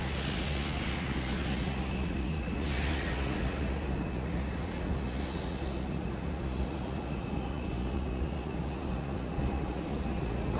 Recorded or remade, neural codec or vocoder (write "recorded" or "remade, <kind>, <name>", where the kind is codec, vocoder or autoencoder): remade, vocoder, Vocos